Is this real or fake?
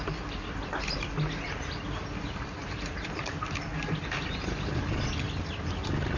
real